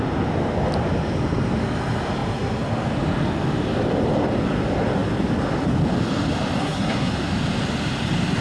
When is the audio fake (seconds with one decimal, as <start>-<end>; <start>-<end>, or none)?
6.6-7.1